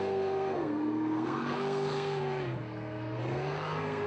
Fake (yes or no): yes